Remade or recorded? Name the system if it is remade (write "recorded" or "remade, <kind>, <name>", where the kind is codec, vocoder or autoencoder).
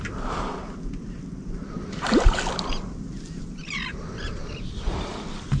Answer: remade, vocoder, BigVGAN v2